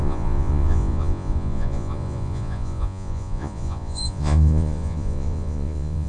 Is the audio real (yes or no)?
no